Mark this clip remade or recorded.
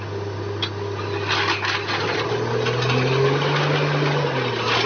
recorded